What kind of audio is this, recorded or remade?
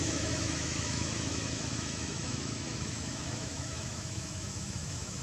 remade